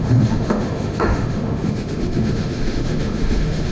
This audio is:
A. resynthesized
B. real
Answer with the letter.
A